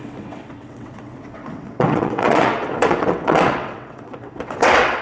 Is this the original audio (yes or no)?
no